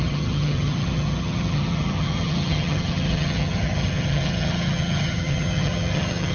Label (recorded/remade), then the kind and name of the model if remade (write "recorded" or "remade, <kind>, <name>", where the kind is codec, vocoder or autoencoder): remade, vocoder, HiFi-GAN